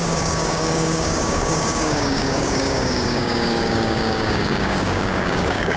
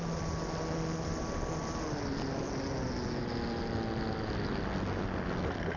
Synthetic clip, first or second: first